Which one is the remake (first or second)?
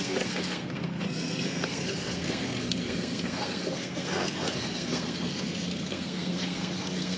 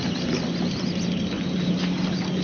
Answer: first